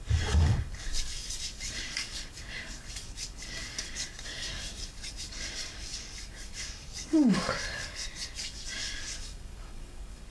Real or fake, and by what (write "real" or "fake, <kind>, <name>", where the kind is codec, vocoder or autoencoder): fake, codec, DAC